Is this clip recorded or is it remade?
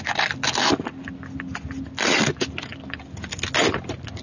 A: recorded